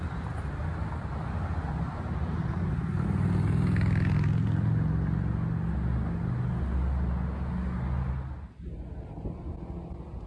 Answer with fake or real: real